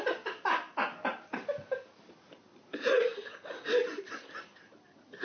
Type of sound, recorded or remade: recorded